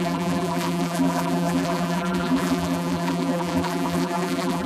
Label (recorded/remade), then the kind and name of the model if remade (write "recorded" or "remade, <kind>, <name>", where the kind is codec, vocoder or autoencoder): remade, vocoder, BigVGAN v2